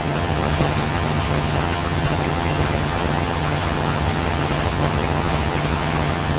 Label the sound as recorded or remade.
remade